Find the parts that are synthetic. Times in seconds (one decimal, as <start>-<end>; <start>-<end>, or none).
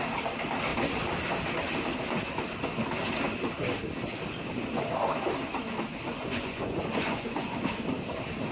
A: 6.2-7.6